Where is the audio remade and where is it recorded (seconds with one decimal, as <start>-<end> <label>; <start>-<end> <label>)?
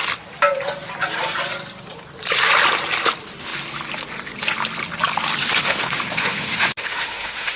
0.0-5.4 recorded; 5.4-7.6 remade